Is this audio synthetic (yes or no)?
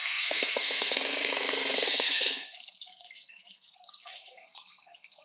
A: yes